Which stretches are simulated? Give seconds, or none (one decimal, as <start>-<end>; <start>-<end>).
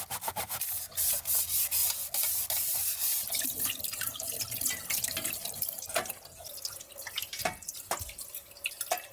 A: 1.8-5.9